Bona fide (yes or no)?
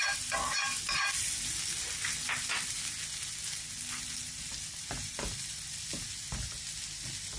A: yes